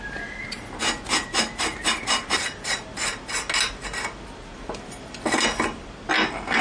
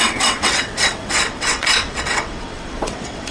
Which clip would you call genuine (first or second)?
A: first